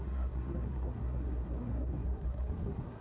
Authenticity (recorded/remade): remade